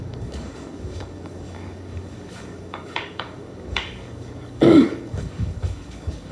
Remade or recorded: remade